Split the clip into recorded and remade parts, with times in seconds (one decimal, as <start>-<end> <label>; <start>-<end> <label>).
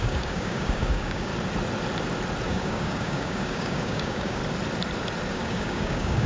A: 0.0-1.3 remade; 1.3-2.5 recorded; 2.5-4.4 remade; 4.4-5.3 recorded; 5.3-6.3 remade